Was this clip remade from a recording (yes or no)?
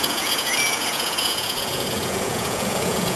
yes